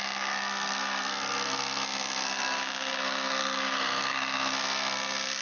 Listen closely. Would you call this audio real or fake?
fake